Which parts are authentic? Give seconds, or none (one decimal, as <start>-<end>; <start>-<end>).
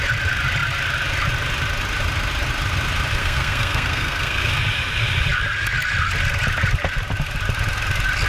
0.0-3.2; 4.5-8.3